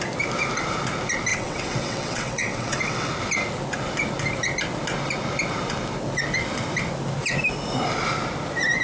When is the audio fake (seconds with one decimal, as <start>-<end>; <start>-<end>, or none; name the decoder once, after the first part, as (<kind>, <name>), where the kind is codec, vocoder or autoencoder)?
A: 1.3-3.1 (vocoder, WaveNeXt)